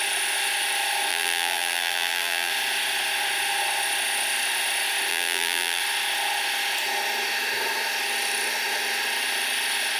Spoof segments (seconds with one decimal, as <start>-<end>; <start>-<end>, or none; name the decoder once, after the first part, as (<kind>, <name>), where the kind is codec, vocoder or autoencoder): 1.1-2.5 (vocoder, BigVGAN v2); 5.1-5.8